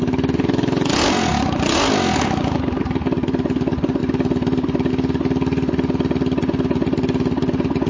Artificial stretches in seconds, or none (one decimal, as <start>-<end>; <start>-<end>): none

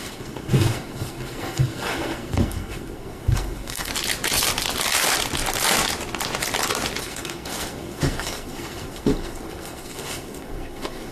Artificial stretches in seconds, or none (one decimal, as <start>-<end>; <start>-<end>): 0.0-3.9; 7.0-11.1

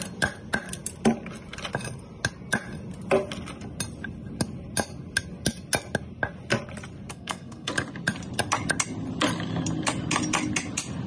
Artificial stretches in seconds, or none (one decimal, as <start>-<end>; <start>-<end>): 7.1-7.7